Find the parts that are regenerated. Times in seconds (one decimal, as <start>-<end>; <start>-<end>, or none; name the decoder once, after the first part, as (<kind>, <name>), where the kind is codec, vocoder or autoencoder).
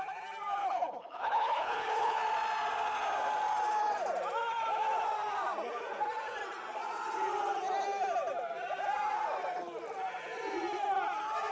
0.6-2.2 (codec, HILCodec)